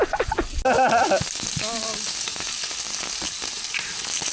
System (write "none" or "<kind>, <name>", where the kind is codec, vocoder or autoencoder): none